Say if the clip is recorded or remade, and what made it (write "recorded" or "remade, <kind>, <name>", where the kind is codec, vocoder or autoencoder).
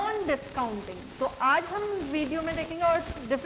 remade, codec, DAC